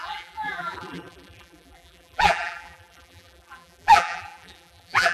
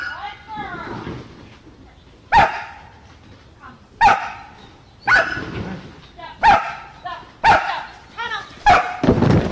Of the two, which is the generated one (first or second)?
first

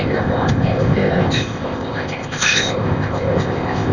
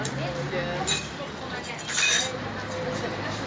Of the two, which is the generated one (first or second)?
first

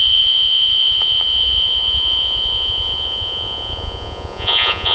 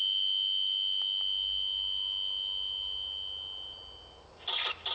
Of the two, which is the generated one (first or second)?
first